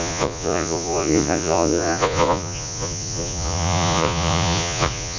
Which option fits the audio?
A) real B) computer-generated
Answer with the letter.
B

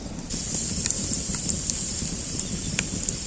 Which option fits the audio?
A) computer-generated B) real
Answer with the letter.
B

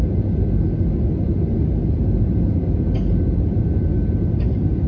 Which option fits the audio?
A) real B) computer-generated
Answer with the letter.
A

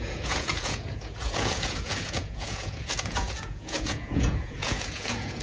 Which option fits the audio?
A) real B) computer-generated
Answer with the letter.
B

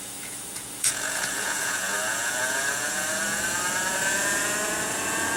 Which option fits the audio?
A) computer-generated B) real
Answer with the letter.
A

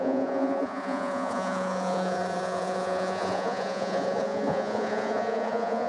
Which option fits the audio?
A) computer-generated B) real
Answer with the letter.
A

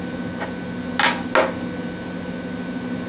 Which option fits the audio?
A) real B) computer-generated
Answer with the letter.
A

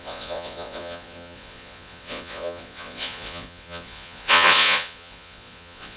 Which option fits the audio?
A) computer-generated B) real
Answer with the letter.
A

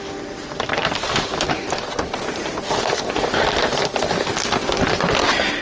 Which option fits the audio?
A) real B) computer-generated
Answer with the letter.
A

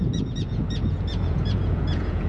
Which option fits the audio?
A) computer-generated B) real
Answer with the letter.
A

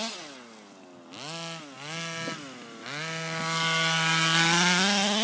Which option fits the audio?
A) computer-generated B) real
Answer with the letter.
B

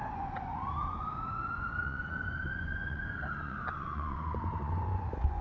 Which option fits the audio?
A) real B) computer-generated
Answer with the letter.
B